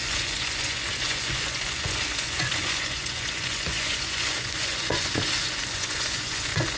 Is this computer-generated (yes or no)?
yes